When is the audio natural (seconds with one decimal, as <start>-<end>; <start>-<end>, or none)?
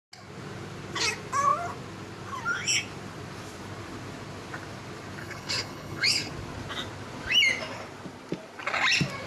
0.0-5.2; 6.3-9.3